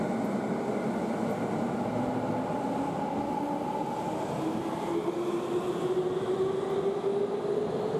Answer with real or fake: real